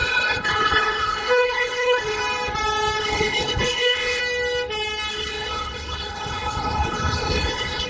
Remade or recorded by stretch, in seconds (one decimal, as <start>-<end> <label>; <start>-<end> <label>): 0.0-2.2 remade; 2.2-3.0 recorded; 3.0-4.2 remade; 4.2-5.1 recorded; 5.1-7.9 remade